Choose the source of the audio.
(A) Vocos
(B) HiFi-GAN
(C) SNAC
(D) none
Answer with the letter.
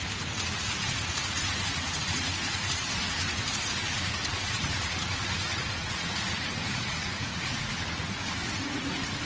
A